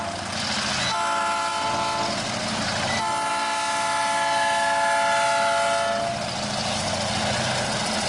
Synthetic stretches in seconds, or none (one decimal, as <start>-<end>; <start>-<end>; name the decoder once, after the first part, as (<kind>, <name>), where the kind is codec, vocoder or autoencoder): none